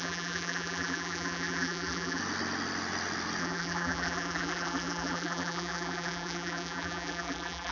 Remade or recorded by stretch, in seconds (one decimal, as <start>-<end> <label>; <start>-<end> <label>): 0.0-2.2 remade; 2.2-3.4 recorded; 3.4-7.7 remade